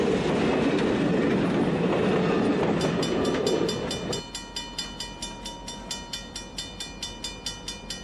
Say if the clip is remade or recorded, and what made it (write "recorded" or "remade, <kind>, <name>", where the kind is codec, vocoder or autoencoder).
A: recorded